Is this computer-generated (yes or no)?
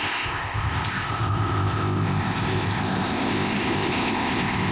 yes